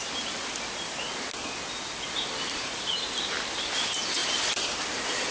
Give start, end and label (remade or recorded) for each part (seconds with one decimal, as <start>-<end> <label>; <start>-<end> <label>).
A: 0.0-5.3 recorded

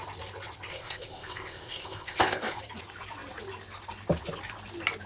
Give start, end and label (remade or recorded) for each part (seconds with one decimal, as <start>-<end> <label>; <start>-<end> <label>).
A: 0.0-0.7 recorded; 0.7-2.6 remade; 2.6-5.1 recorded

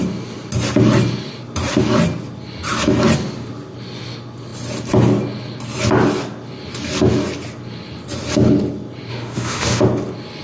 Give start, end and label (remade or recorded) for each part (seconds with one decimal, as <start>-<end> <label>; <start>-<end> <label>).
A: 0.0-9.1 recorded; 9.1-9.8 remade; 9.8-10.4 recorded

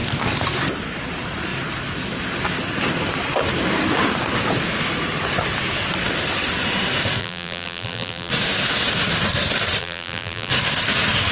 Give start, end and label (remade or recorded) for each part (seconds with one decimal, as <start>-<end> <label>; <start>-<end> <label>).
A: 0.0-7.2 recorded; 7.2-8.3 remade; 8.3-9.8 recorded; 9.8-10.5 remade; 10.5-11.3 recorded

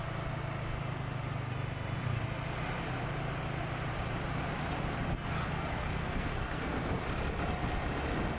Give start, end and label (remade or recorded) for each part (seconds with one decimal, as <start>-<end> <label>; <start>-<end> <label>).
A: 0.0-5.4 recorded; 5.4-7.0 remade; 7.0-8.4 recorded